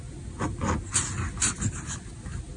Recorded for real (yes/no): yes